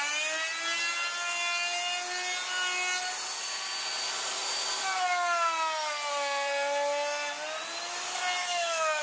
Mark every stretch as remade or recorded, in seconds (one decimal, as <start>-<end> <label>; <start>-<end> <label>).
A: 0.0-8.4 recorded; 8.4-9.0 remade